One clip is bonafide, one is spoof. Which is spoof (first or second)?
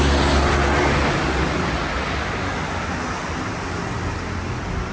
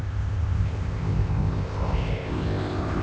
second